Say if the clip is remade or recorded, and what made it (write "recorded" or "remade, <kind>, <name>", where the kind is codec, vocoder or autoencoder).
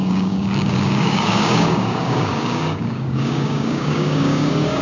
remade, codec, DAC